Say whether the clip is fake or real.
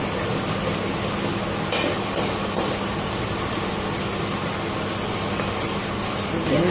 real